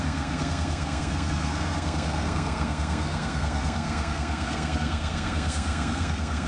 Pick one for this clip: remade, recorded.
remade